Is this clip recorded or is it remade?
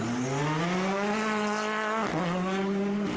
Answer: recorded